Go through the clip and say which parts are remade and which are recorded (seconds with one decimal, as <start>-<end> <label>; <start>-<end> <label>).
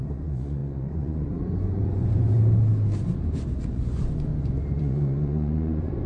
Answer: 0.0-2.4 remade; 2.4-3.6 recorded; 3.6-4.3 remade; 4.3-4.8 recorded; 4.8-6.1 remade